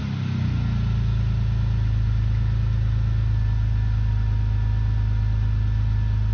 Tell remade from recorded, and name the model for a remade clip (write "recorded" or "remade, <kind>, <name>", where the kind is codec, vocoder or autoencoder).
recorded